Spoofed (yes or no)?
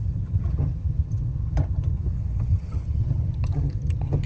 yes